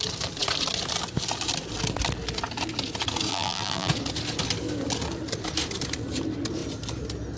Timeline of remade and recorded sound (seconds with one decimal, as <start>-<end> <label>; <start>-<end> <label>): 0.0-3.3 recorded; 3.3-3.9 remade; 3.9-7.4 recorded